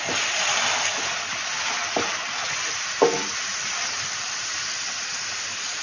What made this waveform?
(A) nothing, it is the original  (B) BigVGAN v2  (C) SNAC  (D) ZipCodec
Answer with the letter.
A